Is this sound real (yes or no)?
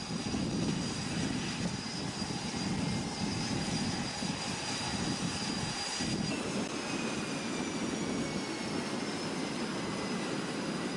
yes